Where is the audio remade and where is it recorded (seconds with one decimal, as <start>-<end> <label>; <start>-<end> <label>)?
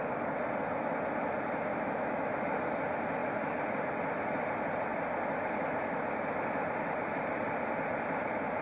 0.0-1.7 recorded; 1.7-2.4 remade; 2.4-8.6 recorded